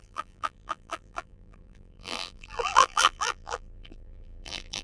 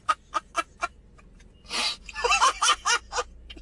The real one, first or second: second